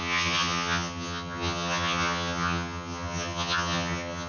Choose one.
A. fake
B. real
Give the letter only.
A